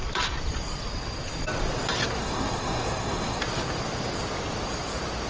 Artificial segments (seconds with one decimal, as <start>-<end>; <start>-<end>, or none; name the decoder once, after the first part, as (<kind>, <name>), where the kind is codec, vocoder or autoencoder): 2.2-3.4 (codec, SNAC)